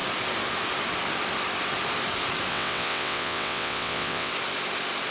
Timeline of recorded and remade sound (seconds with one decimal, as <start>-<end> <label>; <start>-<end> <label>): 0.0-2.5 recorded; 2.5-4.3 remade; 4.3-5.1 recorded